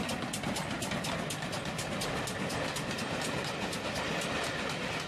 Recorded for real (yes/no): yes